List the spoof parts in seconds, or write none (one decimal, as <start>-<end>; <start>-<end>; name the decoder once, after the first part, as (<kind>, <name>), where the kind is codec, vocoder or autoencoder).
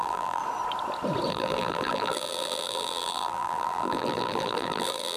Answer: 0.0-0.4 (vocoder, BigVGAN v2); 1.3-5.2